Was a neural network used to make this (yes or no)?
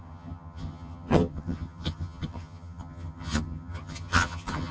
yes